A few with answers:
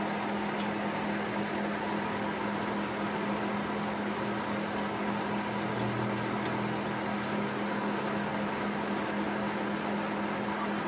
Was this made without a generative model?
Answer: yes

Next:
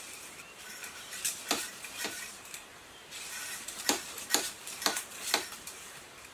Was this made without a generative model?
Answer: no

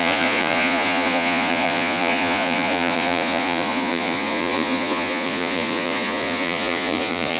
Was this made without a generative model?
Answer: no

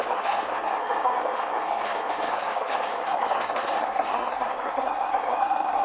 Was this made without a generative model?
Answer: no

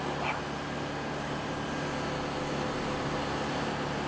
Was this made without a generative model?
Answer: yes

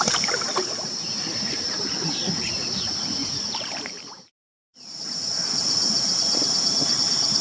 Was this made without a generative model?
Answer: no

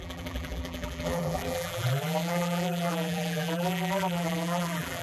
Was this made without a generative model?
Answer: no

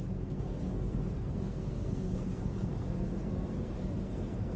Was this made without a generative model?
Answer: no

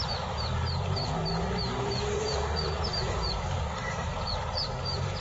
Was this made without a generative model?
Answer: no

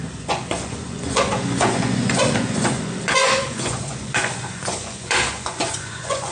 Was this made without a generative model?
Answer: no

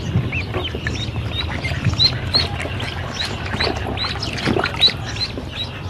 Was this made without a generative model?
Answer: yes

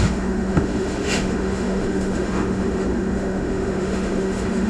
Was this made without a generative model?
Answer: no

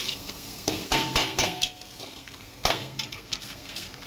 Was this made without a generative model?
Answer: no